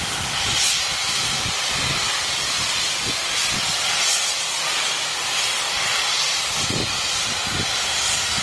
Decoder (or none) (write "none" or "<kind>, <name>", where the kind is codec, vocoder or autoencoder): vocoder, BigVGAN v2